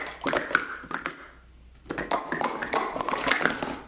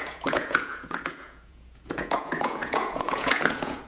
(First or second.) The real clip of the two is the first